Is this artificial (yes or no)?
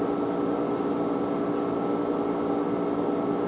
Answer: no